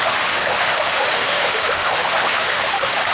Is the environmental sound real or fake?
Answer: fake